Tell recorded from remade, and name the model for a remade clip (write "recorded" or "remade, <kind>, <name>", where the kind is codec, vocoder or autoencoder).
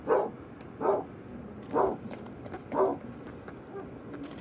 recorded